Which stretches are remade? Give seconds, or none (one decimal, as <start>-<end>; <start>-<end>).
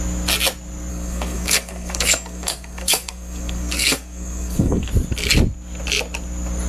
0.9-4.9